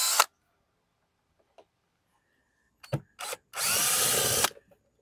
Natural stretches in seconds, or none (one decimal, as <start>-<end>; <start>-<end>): 0.0-5.0